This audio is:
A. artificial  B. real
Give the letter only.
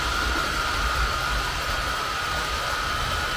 B